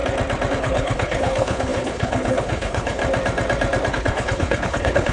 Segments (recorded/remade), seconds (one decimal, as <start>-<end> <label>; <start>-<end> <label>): 0.0-0.5 recorded; 0.5-3.0 remade; 3.0-3.9 recorded; 3.9-5.1 remade

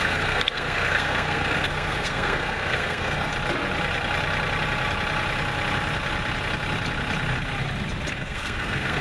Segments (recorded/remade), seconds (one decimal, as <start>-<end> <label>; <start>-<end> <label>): 0.0-3.3 remade; 3.3-8.1 recorded; 8.1-9.0 remade

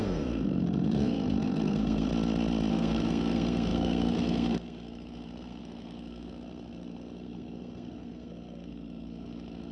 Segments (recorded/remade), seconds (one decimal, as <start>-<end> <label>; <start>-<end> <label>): 0.0-2.1 remade; 2.1-2.7 recorded; 2.7-9.7 remade

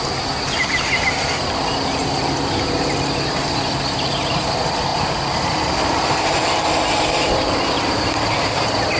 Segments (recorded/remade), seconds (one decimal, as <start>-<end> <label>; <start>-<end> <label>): 0.0-9.0 recorded

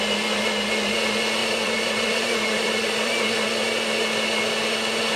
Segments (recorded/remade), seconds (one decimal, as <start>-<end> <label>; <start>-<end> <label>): 0.0-1.4 recorded; 1.4-3.2 remade; 3.2-5.2 recorded